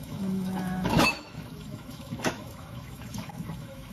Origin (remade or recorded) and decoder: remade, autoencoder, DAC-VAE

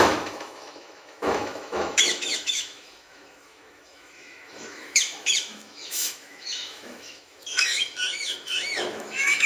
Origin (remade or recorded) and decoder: remade, autoencoder, DAC-VAE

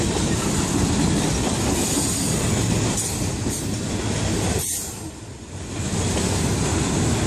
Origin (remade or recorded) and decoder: recorded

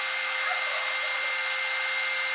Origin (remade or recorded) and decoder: recorded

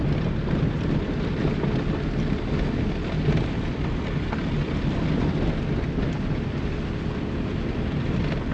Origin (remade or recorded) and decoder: recorded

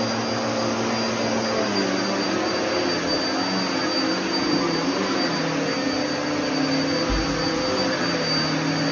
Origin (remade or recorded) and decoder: recorded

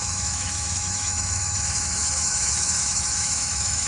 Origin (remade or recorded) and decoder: remade, autoencoder, DAC-VAE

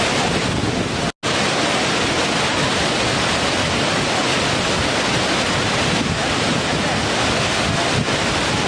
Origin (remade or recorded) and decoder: recorded